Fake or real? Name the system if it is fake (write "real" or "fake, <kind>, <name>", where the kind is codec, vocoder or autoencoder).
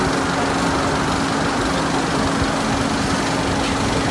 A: real